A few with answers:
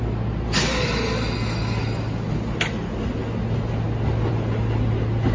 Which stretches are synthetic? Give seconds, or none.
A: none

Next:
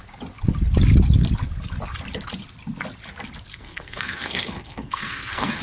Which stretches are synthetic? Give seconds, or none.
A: 3.5-5.6 (codec, SNAC)

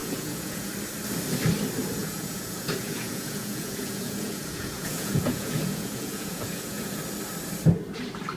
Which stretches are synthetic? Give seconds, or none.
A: 0.0-0.7 (vocoder, Vocos); 2.0-7.0

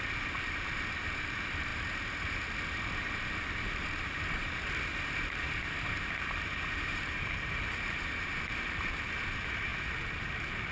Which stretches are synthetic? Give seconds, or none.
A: 0.0-10.7 (vocoder, BigVGAN v2)

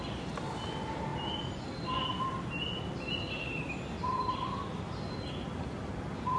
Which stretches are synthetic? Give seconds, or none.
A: none

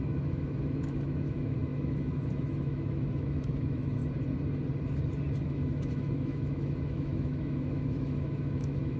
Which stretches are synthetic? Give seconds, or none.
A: 0.0-4.0 (autoencoder, DAC-VAE); 5.4-9.0